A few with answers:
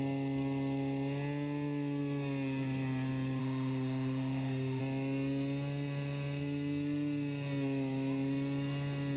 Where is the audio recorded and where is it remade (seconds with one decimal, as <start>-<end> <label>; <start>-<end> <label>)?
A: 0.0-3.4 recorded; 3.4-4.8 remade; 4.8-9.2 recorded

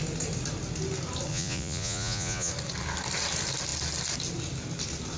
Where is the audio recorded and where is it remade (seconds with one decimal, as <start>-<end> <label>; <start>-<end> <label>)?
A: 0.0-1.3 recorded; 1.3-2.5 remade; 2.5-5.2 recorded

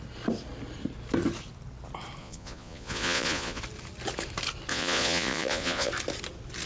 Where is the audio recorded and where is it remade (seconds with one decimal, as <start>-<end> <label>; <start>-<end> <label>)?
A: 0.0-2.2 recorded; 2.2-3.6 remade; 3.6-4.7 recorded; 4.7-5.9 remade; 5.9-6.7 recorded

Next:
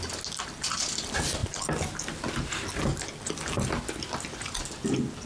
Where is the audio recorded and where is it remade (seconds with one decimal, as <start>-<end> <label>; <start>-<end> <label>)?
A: 0.0-5.3 recorded